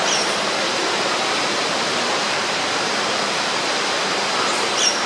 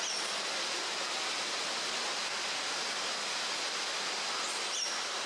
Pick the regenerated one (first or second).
first